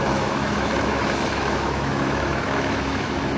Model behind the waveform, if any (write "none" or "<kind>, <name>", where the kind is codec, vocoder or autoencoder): autoencoder, DAC-VAE